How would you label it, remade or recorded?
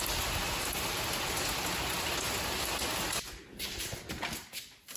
recorded